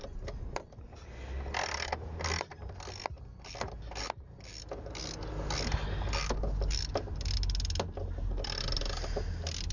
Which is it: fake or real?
real